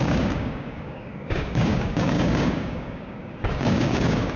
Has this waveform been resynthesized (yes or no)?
yes